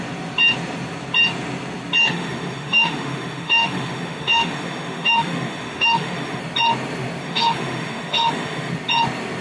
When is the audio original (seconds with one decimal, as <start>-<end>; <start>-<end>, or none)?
0.0-2.0; 6.4-7.2; 8.7-9.4